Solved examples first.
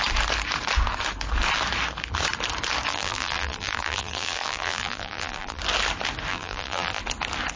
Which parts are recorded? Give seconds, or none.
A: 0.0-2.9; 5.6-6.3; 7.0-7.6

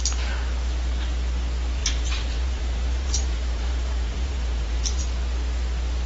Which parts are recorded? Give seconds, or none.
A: 0.0-1.8; 5.0-6.1

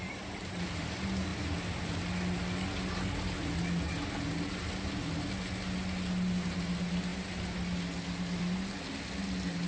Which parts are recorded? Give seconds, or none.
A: 0.8-9.7

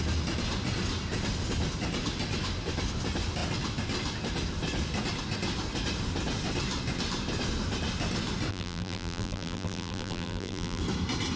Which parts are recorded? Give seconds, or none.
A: 0.0-8.5; 10.8-11.4

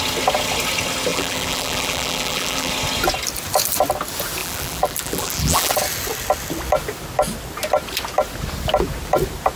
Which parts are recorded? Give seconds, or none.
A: 0.0-1.1; 2.7-4.4; 5.7-9.6

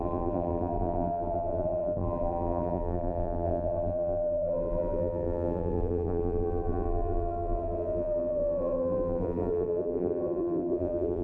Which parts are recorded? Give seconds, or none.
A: none

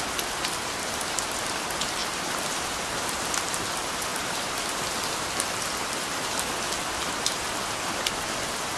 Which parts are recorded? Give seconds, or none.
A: 0.0-2.0; 3.3-4.1; 5.7-8.8